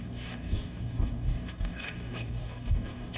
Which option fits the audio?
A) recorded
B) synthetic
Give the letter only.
B